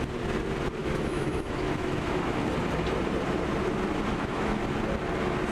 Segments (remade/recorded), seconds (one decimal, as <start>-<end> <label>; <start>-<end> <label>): 0.0-0.8 recorded; 0.8-2.4 remade; 2.4-4.1 recorded; 4.1-4.6 remade; 4.6-5.5 recorded